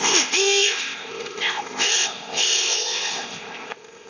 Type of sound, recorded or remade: remade